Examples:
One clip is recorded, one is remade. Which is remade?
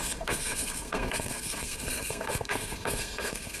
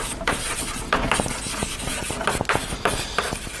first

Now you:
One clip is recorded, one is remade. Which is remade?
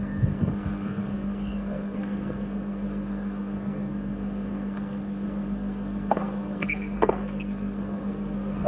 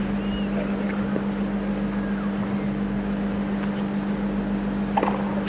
first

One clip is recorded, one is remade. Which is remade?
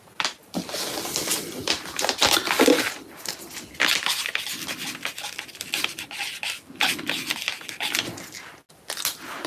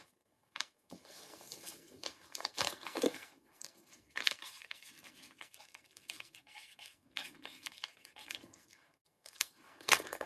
second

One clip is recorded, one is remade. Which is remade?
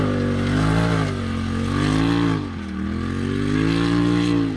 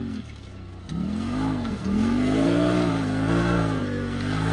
second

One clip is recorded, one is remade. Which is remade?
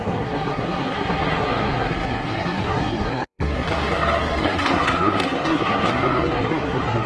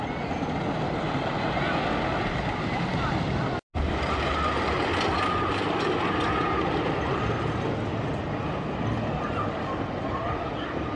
first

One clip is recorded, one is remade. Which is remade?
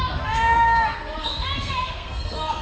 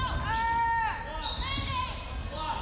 first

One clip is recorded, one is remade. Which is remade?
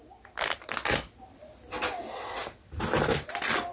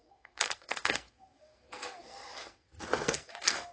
second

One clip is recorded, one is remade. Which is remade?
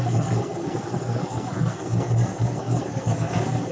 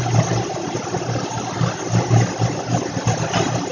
first